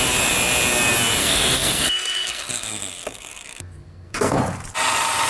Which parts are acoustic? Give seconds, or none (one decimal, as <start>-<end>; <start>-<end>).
0.0-1.2; 4.4-5.3